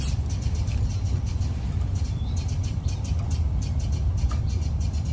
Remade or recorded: recorded